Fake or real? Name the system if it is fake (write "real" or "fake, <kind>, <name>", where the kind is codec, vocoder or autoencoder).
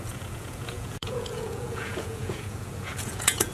fake, vocoder, Vocos